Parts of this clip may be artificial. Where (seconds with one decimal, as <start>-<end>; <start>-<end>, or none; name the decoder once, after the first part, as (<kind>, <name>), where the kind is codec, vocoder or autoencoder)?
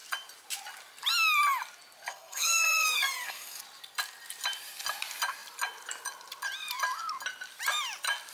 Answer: 2.1-3.6 (codec, SNAC)